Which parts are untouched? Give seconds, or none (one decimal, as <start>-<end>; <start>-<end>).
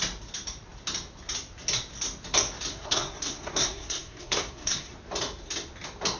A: 0.0-2.7; 4.9-6.2